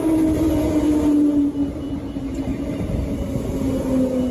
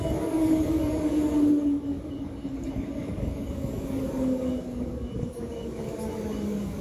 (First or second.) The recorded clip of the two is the first